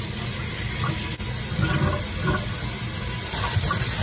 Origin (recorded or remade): recorded